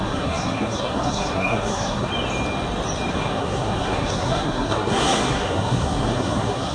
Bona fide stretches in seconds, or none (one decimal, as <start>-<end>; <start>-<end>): 2.1-3.1